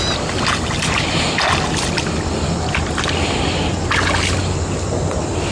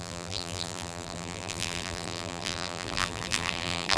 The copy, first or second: second